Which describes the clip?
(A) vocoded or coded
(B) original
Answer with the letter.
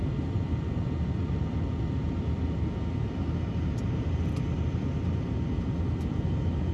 B